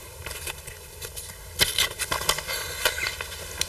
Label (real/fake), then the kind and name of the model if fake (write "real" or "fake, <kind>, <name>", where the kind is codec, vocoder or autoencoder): real